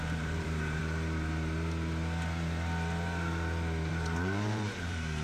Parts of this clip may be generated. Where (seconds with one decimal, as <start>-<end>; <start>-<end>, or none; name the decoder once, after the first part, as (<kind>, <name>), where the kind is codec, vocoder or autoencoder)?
0.0-0.8 (vocoder, BigVGAN v2); 3.9-5.2